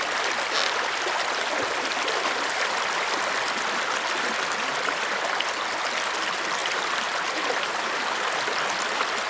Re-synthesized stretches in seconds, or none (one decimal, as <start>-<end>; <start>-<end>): 1.7-2.5; 6.6-8.3